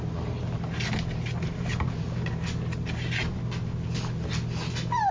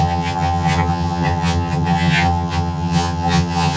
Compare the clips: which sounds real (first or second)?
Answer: first